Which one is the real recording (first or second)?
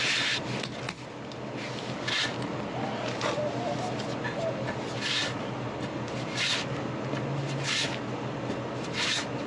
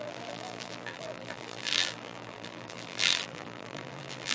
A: first